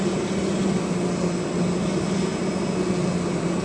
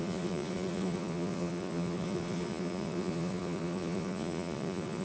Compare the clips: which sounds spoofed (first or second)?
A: second